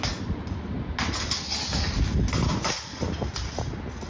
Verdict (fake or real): real